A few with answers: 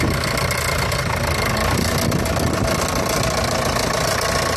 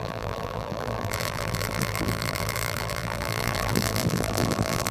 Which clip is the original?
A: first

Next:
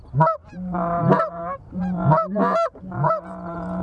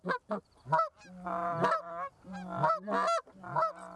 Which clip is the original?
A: second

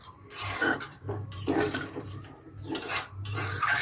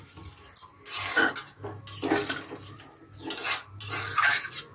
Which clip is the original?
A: second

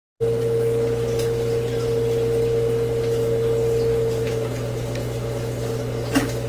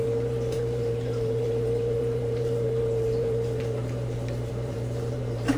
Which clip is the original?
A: first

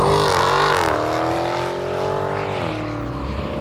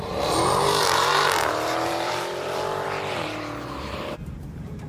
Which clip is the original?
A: first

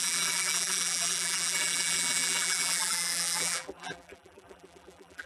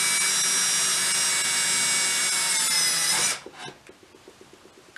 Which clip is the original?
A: second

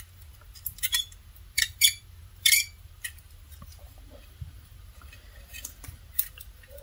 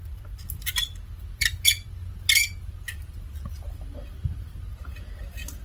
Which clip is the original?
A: second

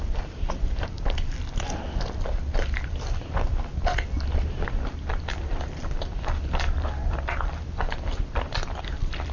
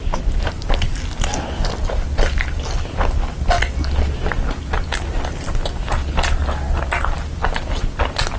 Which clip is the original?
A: second